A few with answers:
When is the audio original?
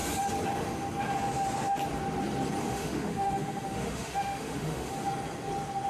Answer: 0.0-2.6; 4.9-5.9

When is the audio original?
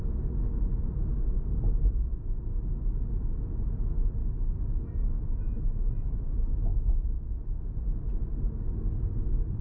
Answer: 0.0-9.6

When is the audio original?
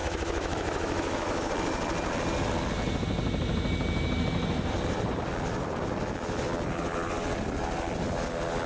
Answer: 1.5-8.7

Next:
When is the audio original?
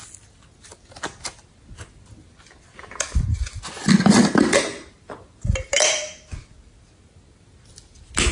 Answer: 0.0-8.3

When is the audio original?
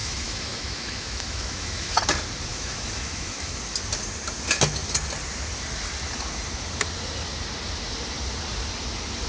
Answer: 2.0-2.5; 3.6-9.3